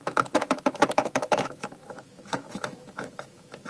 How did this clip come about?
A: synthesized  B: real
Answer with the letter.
A